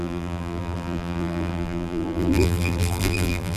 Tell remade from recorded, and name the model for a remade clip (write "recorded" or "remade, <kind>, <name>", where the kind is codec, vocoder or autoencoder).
remade, vocoder, BigVGAN v2